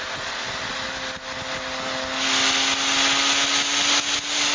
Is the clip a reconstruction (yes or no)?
no